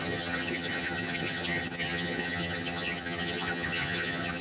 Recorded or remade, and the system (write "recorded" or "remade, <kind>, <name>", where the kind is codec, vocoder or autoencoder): remade, vocoder, HiFi-GAN